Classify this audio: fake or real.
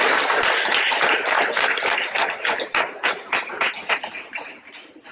real